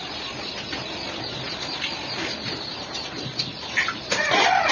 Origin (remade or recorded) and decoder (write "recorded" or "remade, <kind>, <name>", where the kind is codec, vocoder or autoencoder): recorded